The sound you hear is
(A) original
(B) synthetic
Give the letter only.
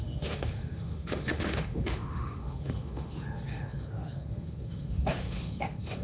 B